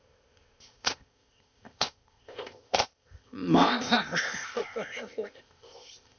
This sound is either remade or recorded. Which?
remade